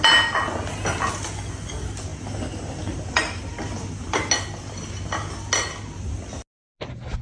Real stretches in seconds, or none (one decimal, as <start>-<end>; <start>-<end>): 0.0-7.2